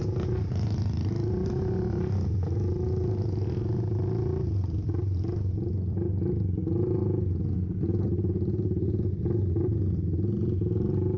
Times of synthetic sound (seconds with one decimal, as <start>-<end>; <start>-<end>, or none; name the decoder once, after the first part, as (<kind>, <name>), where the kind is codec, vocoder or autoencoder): none